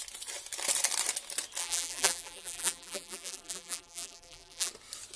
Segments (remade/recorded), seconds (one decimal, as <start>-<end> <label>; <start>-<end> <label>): 0.0-1.6 recorded; 1.6-4.7 remade; 4.7-5.2 recorded